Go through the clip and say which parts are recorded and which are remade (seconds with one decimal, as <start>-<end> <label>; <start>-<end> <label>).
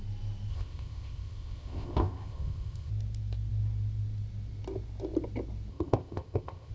0.0-0.5 recorded; 0.5-2.9 remade; 2.9-5.7 recorded; 5.7-6.7 remade